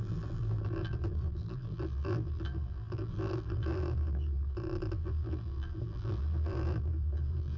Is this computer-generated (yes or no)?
yes